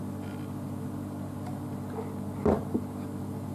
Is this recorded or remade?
recorded